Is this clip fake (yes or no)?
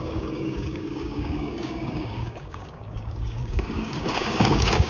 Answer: yes